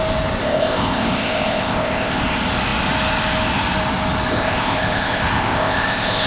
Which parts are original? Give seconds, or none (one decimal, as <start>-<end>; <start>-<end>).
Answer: 0.0-0.4; 2.2-4.3